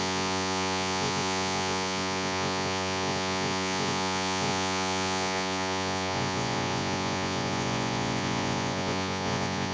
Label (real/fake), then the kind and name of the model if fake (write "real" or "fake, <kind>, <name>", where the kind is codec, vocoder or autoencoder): fake, vocoder, Vocos